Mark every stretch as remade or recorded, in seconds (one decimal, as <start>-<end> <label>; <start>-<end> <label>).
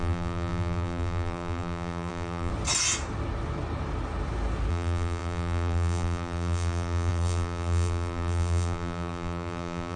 0.0-2.5 remade; 2.5-4.7 recorded; 4.7-10.0 remade